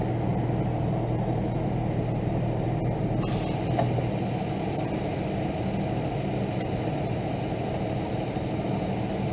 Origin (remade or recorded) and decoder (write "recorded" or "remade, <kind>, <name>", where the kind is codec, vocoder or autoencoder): recorded